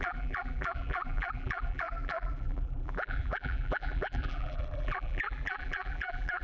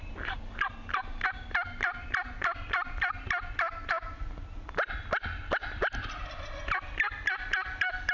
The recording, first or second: second